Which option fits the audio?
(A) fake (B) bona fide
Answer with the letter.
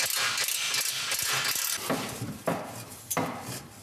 B